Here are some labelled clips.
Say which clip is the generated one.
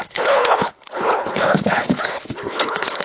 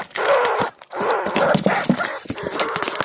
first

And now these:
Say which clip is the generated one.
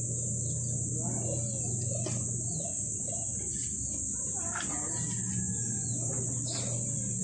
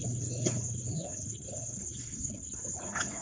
second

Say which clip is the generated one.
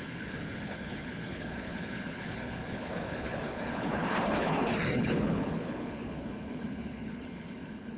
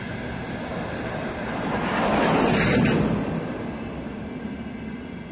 first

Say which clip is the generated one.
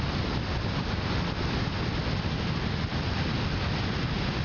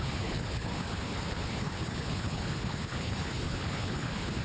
second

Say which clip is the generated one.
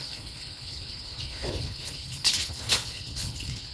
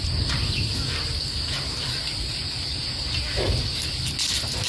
first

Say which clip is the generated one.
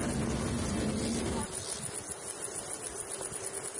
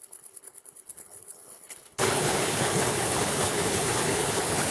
second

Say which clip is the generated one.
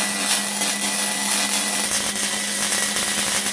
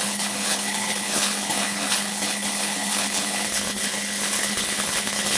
second